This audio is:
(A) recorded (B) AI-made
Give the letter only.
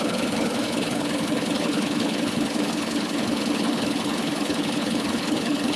B